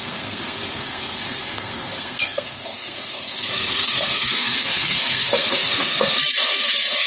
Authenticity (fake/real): fake